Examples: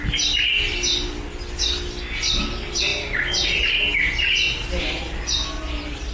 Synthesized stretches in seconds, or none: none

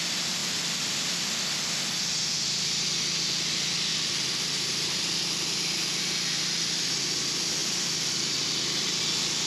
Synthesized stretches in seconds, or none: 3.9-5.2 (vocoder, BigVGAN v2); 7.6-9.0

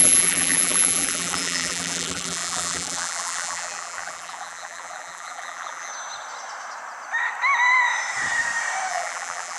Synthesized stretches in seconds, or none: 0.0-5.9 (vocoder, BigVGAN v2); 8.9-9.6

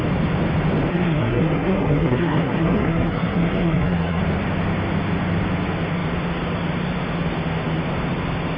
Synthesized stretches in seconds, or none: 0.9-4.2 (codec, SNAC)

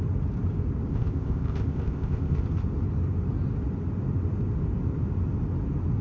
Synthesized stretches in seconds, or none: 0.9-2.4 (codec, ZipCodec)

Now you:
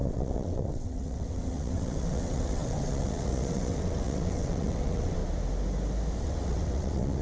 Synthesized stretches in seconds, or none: 0.0-5.2 (vocoder, WaveNeXt); 6.2-7.2

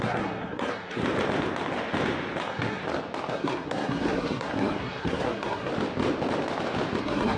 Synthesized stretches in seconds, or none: 0.0-1.0 (codec, SNAC); 2.4-2.8; 3.3-5.7; 7.0-7.4

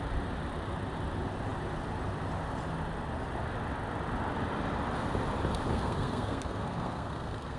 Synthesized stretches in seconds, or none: 5.7-7.6 (codec, SNAC)